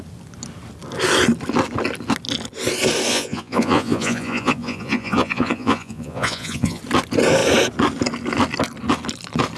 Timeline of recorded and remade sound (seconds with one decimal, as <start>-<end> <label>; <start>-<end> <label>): 0.0-3.1 recorded; 3.1-6.8 remade; 6.8-9.6 recorded